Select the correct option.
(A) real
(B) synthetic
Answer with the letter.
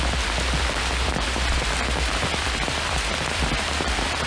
A